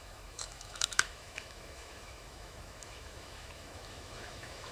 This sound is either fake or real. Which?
fake